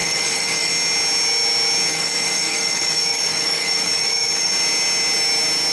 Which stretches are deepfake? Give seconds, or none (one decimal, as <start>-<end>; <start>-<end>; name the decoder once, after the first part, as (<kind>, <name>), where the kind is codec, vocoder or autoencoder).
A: 0.0-0.7 (codec, DAC); 1.9-4.5